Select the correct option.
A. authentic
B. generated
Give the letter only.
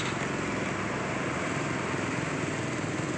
A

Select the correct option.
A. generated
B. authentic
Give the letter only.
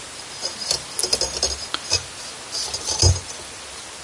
B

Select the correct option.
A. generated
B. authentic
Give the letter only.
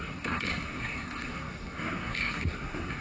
A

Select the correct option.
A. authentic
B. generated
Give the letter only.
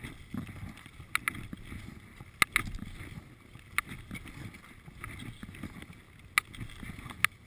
A